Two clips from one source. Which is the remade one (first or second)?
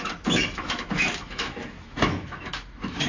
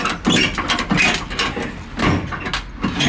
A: first